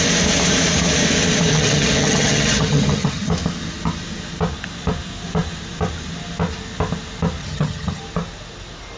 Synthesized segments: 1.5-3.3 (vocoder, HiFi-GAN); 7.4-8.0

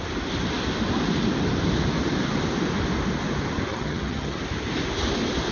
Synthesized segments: 3.7-4.4 (vocoder, HiFi-GAN)

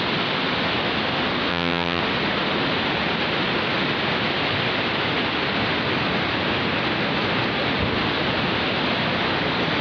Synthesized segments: 1.5-2.0 (vocoder, HiFi-GAN)